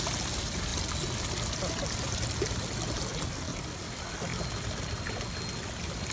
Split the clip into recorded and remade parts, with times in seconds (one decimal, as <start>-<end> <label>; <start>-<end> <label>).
0.0-6.1 recorded